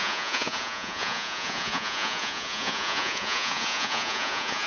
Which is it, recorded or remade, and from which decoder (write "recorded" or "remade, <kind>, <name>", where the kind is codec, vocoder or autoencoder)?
remade, vocoder, Vocos